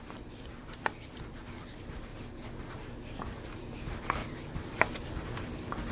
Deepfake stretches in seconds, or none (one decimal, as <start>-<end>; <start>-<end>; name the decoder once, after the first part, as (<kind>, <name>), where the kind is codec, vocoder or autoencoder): 0.0-2.1 (vocoder, BigVGAN v2); 3.4-4.2; 4.7-5.9